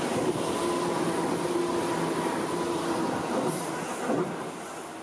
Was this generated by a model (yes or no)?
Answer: no